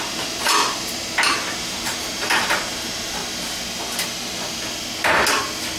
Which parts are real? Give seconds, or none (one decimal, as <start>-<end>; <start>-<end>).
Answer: 3.2-5.8